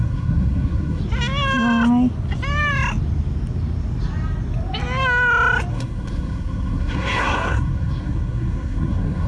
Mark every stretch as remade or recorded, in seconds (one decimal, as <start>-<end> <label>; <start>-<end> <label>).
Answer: 0.0-1.0 remade; 1.0-5.7 recorded; 5.7-9.3 remade